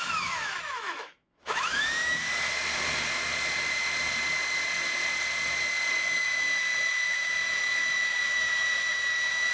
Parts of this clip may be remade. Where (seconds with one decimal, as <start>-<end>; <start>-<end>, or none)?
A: 0.0-2.3; 6.0-9.5